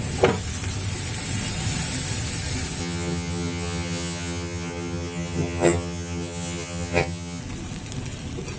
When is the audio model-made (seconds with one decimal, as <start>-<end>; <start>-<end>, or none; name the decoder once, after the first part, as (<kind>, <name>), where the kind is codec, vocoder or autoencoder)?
2.8-7.4 (vocoder, HiFi-GAN)